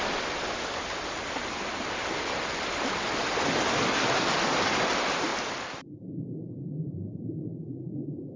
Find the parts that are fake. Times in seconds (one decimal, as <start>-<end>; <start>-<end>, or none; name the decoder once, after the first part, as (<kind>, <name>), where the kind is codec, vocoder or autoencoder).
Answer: 5.3-6.1 (vocoder, BigVGAN v2); 7.5-8.4